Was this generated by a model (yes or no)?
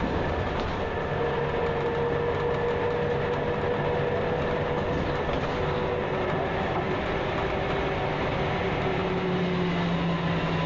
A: no